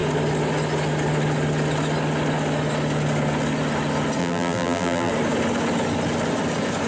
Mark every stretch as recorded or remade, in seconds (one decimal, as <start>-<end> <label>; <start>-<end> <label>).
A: 0.0-4.2 recorded; 4.2-5.1 remade; 5.1-6.9 recorded